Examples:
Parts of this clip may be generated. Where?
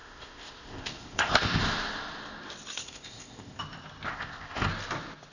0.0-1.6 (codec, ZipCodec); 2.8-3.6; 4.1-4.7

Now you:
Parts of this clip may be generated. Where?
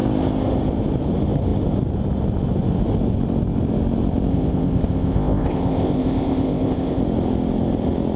4.3-7.0 (codec, ZipCodec)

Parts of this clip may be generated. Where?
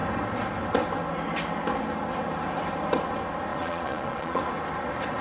3.5-4.4 (vocoder, Vocos)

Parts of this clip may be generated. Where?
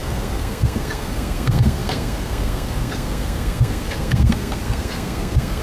0.0-5.6 (codec, SNAC)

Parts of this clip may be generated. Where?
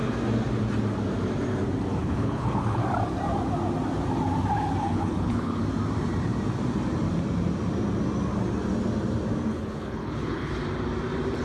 2.0-2.8 (codec, HILCodec); 4.8-5.6; 9.5-10.6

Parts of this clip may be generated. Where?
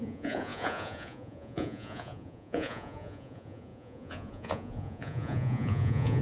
0.0-6.2 (vocoder, Vocos)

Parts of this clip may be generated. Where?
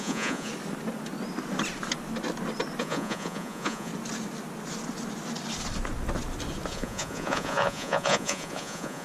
0.0-0.5 (vocoder, Vocos); 2.8-3.9; 6.7-9.0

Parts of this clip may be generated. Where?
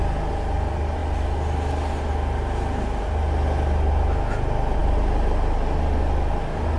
none